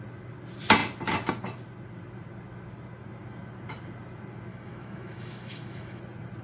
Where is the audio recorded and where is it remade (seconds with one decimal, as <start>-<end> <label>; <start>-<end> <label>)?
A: 0.0-4.5 recorded; 4.5-6.0 remade; 6.0-6.4 recorded